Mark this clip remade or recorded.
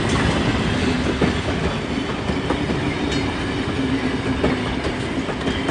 recorded